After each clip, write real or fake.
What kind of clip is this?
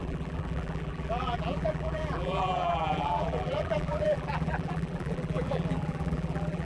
fake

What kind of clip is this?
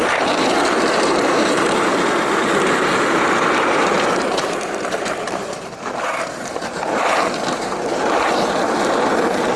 fake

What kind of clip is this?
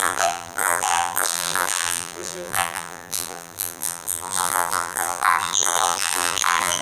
fake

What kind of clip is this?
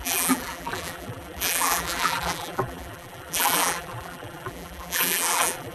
fake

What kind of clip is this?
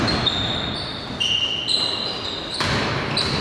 fake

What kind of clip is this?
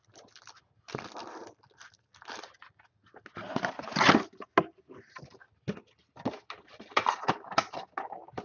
real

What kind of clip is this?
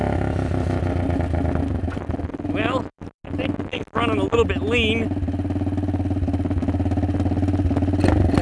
real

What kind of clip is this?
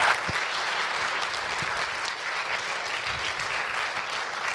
real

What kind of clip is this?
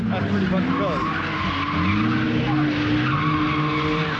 real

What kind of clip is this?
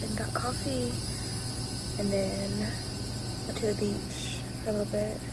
real